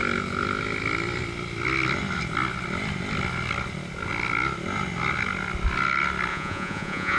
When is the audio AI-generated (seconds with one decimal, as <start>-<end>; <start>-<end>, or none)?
6.3-7.2